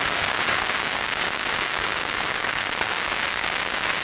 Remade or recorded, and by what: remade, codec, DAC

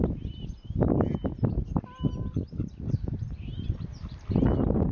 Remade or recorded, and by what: recorded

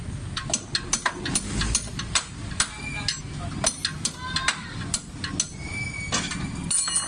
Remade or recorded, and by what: recorded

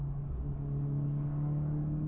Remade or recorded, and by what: remade, codec, DAC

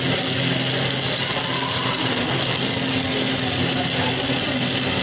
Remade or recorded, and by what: recorded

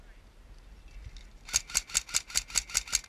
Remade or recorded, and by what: recorded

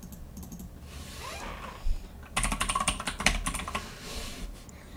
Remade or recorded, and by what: recorded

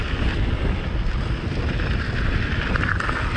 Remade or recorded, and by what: recorded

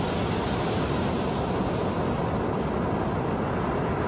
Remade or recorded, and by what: recorded